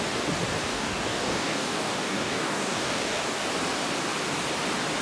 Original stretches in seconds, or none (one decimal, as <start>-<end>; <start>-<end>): 0.0-0.7; 3.4-5.0